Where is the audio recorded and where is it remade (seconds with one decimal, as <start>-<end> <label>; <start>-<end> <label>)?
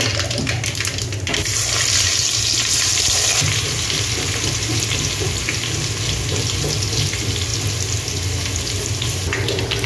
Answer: 0.0-9.9 recorded